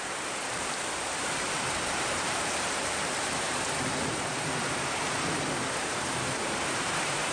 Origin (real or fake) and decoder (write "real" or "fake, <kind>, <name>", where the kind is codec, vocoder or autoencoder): fake, vocoder, BigVGAN v2